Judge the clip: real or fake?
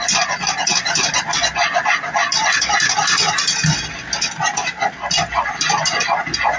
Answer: real